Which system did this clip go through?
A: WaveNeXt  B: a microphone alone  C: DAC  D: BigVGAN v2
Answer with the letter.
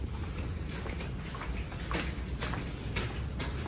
B